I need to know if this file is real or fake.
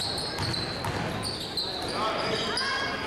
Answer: real